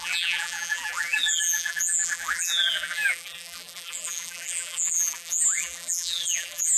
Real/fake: fake